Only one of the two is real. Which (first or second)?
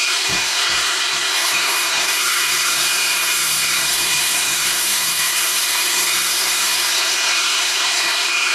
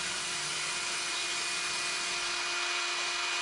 second